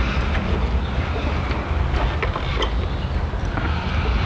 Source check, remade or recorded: recorded